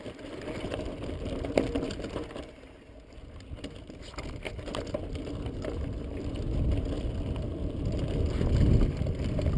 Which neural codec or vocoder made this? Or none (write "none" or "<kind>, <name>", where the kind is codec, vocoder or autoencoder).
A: none